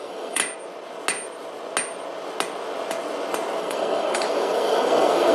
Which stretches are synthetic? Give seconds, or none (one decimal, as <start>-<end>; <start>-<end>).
0.0-0.4; 3.6-5.3